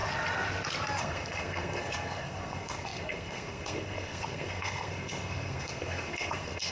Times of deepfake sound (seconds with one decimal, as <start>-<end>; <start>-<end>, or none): 1.0-6.7